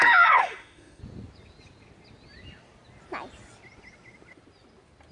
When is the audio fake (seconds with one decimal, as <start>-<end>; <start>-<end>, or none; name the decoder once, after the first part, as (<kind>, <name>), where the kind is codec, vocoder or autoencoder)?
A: 0.4-1.0 (autoencoder, DAC-VAE)